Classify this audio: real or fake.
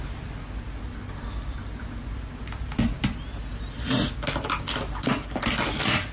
real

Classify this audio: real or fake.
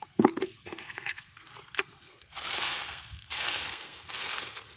fake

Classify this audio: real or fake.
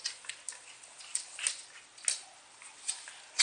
real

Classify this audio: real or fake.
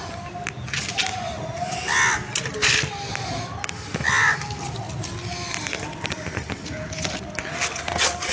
real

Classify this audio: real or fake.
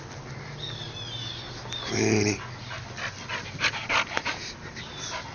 real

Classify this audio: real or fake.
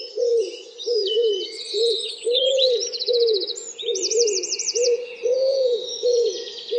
fake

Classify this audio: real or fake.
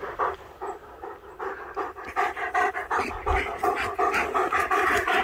real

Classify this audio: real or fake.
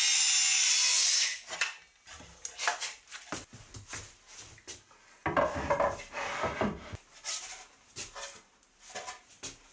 real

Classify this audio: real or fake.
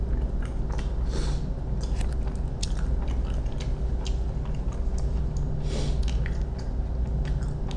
real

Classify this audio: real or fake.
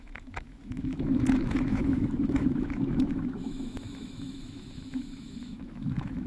fake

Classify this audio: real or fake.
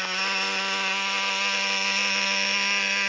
real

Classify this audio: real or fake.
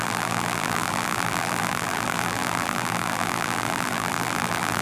fake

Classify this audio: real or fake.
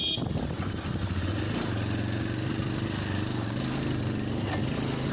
real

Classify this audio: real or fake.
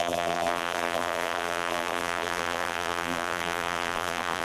fake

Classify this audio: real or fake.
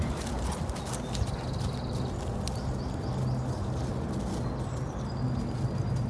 real